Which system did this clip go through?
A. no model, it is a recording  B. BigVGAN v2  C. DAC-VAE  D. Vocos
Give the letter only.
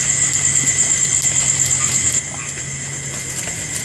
A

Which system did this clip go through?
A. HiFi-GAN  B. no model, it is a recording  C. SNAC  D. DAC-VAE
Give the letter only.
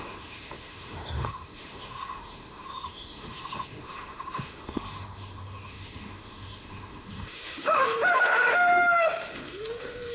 D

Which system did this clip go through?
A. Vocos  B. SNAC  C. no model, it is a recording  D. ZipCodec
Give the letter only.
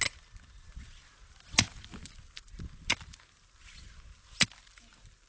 C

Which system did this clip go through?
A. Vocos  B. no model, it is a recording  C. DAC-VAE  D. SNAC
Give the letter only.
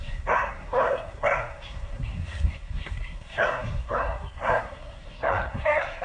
D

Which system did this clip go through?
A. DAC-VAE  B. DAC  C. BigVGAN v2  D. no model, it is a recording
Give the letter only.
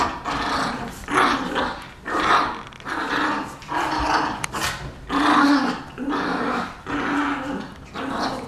D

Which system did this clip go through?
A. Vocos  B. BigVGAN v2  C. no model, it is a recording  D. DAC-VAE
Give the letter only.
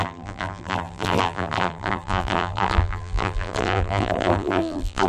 B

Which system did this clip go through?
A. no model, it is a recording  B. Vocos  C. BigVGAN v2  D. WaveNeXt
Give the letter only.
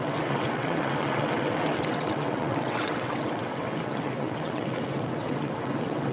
D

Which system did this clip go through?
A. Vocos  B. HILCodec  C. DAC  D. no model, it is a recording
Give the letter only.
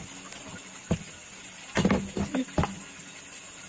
D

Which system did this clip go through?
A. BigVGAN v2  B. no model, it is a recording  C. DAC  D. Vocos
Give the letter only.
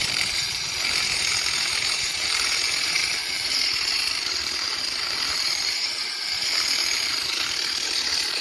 A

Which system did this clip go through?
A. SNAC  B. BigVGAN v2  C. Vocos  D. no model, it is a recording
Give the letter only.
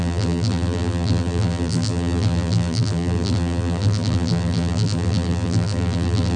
B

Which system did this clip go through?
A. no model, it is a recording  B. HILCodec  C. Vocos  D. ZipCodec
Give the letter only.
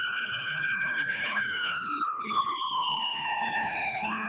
B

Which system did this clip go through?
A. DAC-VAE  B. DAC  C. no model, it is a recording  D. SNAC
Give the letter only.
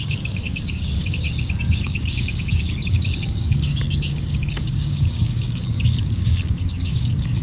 B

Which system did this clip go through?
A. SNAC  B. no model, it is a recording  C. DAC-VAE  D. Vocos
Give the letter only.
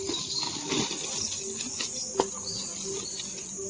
B